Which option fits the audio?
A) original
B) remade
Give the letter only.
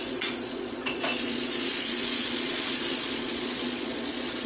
B